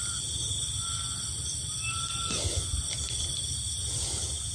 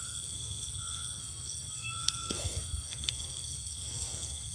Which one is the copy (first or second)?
second